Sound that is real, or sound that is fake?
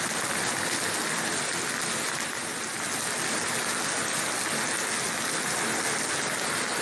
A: real